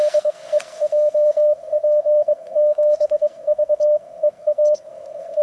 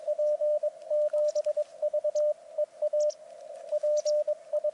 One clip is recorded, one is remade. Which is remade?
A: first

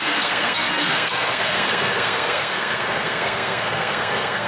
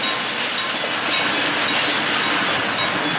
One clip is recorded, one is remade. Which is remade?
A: first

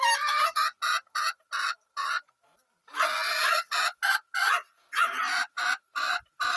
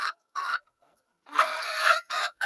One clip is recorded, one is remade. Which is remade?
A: second